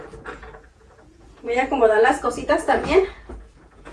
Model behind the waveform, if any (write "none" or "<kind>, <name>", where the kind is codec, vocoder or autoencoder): vocoder, Vocos